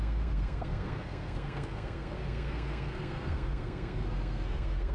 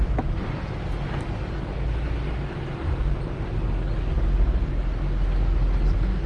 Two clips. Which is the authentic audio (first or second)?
second